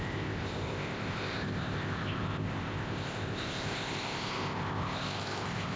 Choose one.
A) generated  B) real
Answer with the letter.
A